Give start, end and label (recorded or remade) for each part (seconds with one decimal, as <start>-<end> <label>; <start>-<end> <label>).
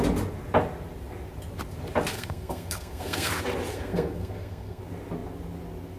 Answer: 0.0-2.1 recorded; 2.1-3.3 remade; 3.3-3.7 recorded; 3.7-4.8 remade; 4.8-6.0 recorded